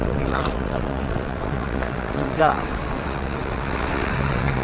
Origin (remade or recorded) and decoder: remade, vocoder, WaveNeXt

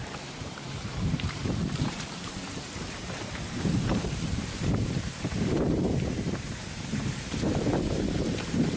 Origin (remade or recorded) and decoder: remade, vocoder, BigVGAN v2